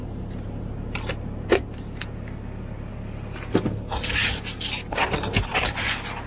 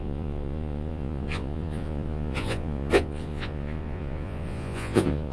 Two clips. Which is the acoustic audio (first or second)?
first